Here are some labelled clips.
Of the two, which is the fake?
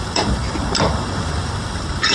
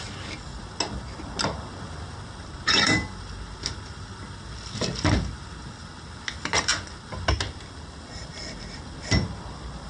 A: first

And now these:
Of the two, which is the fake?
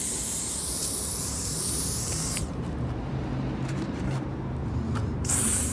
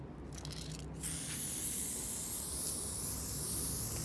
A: first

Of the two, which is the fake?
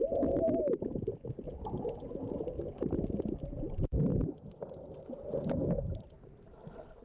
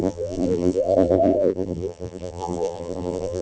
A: second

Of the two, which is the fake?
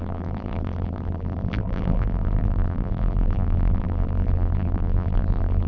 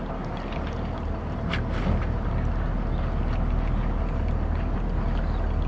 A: first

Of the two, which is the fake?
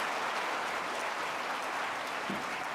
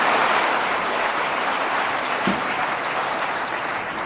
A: second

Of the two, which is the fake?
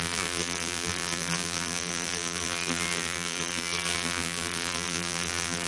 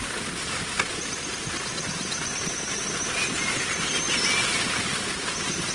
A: first